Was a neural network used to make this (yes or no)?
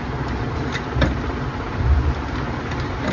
no